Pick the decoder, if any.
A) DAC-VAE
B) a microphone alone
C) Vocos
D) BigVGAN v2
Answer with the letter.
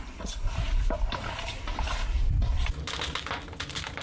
B